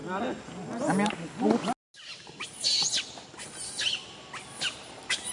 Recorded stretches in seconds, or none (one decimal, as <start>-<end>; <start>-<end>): 0.0-5.3